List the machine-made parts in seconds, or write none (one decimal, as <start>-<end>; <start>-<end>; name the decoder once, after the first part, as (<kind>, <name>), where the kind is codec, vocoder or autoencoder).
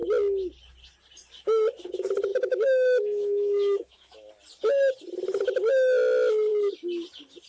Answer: 2.3-4.3 (autoencoder, DAC-VAE)